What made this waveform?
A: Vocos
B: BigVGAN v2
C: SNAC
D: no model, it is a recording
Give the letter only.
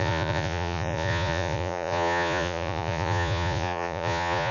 A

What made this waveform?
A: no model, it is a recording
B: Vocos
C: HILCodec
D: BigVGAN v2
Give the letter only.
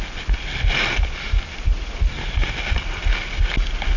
A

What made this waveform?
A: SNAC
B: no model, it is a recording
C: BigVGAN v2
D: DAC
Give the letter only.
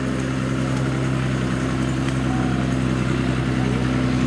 B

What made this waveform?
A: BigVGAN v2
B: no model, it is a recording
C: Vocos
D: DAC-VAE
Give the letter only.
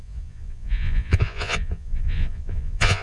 C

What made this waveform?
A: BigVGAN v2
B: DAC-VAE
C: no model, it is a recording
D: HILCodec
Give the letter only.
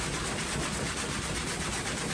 C